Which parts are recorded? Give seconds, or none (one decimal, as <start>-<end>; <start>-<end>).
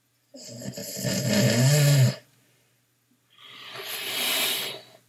0.0-5.1